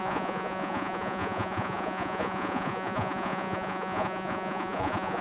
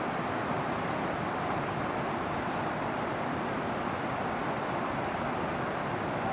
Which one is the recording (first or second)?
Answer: second